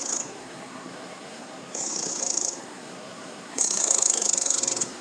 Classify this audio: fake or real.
fake